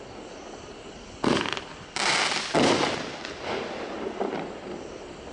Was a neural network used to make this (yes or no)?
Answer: yes